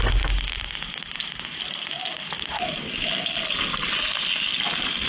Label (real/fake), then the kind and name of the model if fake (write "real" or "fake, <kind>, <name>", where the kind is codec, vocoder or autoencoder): real